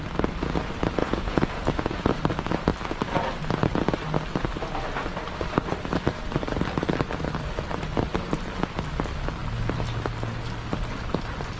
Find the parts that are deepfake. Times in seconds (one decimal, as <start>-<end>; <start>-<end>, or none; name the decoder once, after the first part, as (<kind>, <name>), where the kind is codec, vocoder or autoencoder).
1.0-2.2 (vocoder, Vocos)